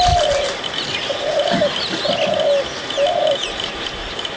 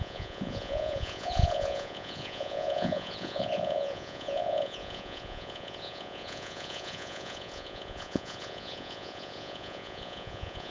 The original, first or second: first